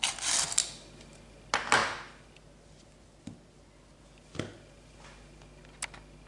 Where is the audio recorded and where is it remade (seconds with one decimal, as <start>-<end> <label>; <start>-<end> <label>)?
0.0-6.3 recorded